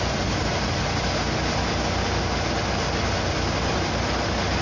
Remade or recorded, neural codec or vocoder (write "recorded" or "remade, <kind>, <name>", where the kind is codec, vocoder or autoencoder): recorded